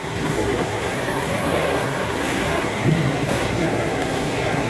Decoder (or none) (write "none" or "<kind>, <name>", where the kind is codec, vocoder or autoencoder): codec, SNAC